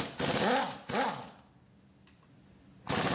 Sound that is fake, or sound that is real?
real